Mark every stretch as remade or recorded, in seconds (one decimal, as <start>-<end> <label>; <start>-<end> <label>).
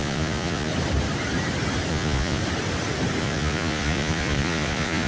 0.0-0.7 remade; 0.7-1.9 recorded; 1.9-2.4 remade; 2.4-3.2 recorded; 3.2-5.1 remade